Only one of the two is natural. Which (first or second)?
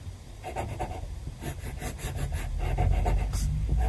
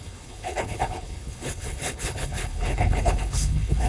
first